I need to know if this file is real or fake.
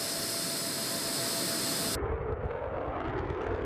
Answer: real